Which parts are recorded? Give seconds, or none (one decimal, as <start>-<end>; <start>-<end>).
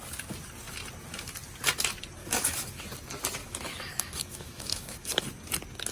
0.0-2.2; 2.8-3.4; 5.1-5.9